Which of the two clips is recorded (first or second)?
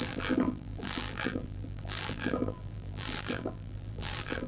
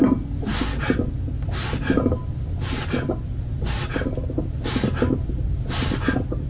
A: second